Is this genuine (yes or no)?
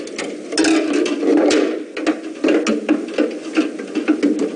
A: yes